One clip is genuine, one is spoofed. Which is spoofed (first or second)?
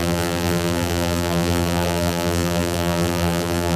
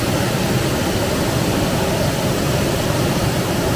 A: first